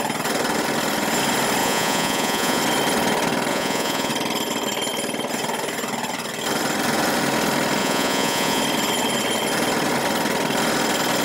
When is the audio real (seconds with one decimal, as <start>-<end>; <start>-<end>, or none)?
0.0-1.6; 2.6-3.5; 4.1-7.8; 8.6-11.2